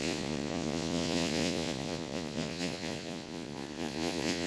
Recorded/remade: remade